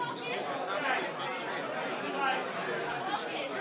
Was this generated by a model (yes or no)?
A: no